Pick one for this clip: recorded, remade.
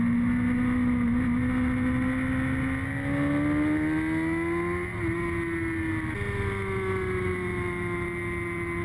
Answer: recorded